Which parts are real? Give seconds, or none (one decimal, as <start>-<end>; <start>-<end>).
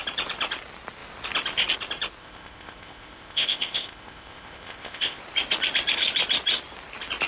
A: 0.0-2.2; 5.2-7.3